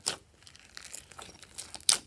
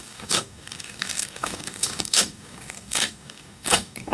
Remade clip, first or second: second